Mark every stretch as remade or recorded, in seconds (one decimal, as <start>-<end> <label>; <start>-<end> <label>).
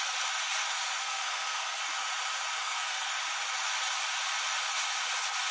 0.0-1.0 recorded; 1.0-1.8 remade; 1.8-2.6 recorded; 2.6-3.1 remade; 3.1-5.5 recorded